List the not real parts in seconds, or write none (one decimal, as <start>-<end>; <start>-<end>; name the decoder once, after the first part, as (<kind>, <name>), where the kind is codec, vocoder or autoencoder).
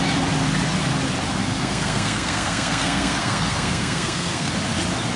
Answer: 1.4-4.5 (codec, SNAC)